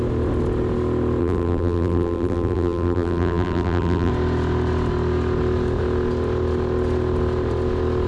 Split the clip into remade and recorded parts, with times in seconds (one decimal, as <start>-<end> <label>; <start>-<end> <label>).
0.0-1.2 recorded; 1.2-4.1 remade; 4.1-8.1 recorded